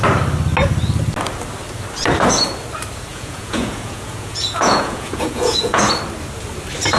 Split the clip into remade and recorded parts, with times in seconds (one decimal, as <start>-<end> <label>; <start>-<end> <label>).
0.0-3.1 recorded; 3.1-5.8 remade; 5.8-7.0 recorded